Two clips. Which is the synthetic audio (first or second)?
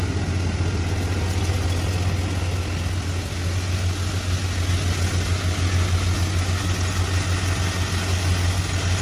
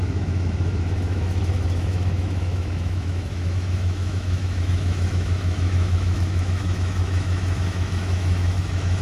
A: second